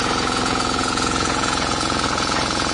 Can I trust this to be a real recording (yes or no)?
no